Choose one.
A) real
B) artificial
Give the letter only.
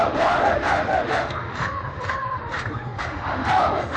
B